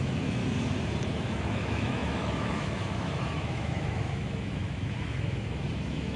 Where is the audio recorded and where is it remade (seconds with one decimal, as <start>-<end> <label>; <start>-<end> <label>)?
0.0-0.4 remade; 0.4-1.1 recorded; 1.1-6.2 remade